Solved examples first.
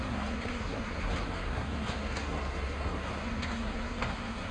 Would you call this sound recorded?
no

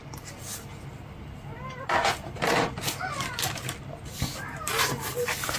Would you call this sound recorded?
yes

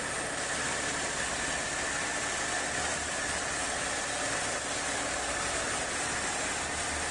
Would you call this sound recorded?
yes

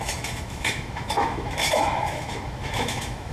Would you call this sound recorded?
no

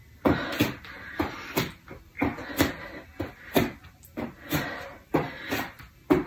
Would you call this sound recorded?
yes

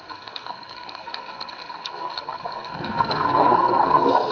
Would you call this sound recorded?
no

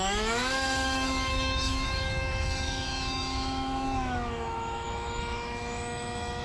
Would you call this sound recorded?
no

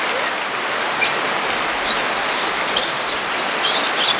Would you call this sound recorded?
yes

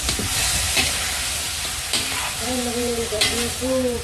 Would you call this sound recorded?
no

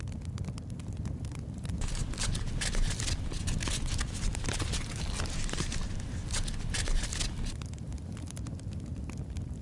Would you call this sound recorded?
no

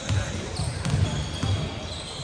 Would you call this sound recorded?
yes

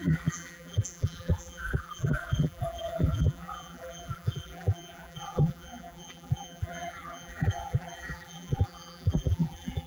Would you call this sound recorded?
no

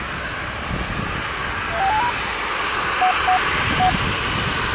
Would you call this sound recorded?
yes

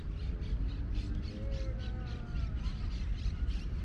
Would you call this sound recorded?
yes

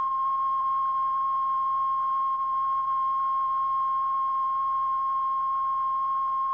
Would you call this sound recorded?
yes